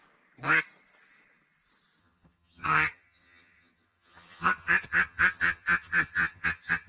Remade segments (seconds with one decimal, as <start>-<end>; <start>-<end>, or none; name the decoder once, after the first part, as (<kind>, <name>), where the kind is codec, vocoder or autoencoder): 2.0-6.9 (vocoder, HiFi-GAN)